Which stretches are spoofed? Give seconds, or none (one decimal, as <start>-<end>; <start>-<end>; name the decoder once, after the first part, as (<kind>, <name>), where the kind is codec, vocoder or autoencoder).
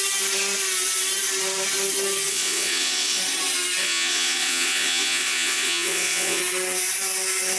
2.3-3.2 (vocoder, Vocos); 3.8-6.4